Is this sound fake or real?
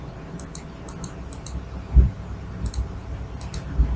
real